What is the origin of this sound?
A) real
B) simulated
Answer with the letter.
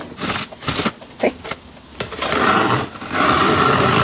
B